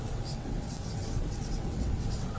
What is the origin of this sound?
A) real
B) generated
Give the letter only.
B